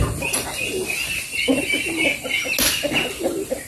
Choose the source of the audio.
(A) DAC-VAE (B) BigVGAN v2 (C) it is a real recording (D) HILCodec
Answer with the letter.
C